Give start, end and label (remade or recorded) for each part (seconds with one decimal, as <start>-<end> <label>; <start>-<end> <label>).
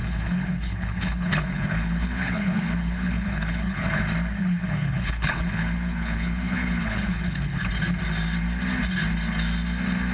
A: 0.0-4.0 remade; 4.0-4.4 recorded; 4.4-7.7 remade; 7.7-10.1 recorded